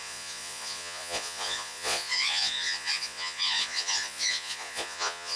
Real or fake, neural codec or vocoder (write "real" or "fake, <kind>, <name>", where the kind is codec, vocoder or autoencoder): fake, vocoder, Vocos